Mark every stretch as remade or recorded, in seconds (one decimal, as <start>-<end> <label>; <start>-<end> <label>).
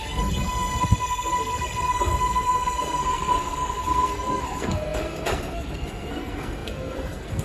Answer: 0.0-7.4 remade